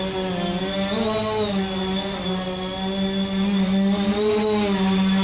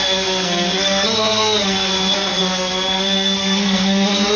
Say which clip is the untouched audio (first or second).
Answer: first